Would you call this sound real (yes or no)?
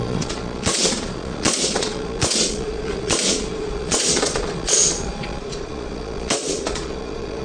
no